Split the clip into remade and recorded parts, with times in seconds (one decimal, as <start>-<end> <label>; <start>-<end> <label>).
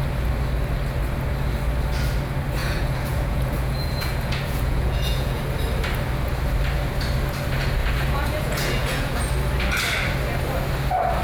0.0-2.6 recorded; 2.6-5.4 remade; 5.4-7.8 recorded; 7.8-9.2 remade; 9.2-11.2 recorded